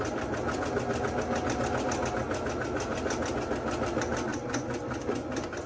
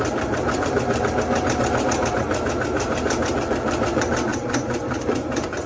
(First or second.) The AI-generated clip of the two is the second